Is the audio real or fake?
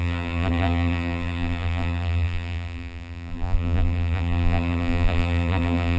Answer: fake